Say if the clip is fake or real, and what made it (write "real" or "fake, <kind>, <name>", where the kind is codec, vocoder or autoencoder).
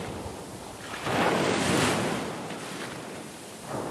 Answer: real